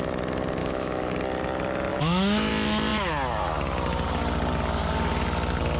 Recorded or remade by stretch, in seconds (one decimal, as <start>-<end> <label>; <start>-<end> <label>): 0.0-0.6 recorded; 0.6-1.1 remade; 1.1-1.9 recorded; 1.9-2.5 remade; 2.5-5.8 recorded